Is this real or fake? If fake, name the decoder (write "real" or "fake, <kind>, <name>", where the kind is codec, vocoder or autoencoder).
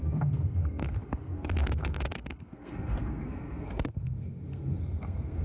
fake, codec, SNAC